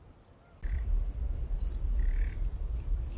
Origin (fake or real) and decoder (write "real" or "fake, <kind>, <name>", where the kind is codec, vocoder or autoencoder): real